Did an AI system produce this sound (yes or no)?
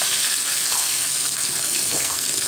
yes